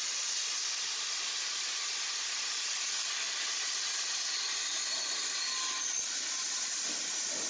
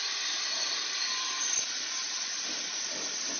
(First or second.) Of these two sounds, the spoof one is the second